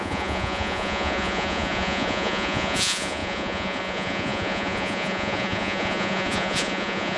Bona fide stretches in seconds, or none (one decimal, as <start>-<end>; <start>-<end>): none